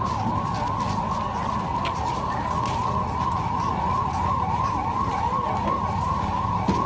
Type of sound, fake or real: real